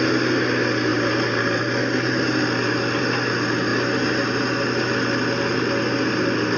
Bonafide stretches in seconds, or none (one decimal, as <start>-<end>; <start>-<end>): 0.0-6.6